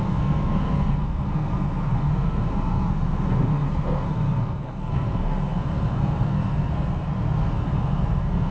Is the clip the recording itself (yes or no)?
no